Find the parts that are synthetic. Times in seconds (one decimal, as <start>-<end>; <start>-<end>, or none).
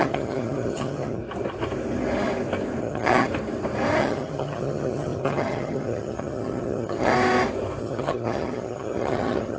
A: 0.0-1.2; 2.8-3.3; 4.0-7.1; 7.8-9.6